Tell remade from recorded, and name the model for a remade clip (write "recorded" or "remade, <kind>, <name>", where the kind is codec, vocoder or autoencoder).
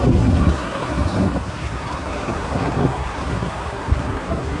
remade, codec, SNAC